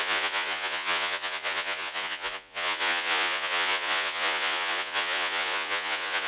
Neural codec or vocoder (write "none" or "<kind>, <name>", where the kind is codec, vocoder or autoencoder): vocoder, Vocos